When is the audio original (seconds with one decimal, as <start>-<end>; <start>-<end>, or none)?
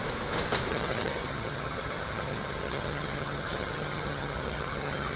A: 0.0-0.7